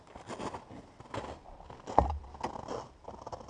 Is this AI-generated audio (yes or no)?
no